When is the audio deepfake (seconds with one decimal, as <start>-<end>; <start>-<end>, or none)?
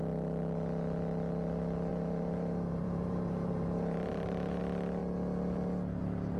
1.9-4.6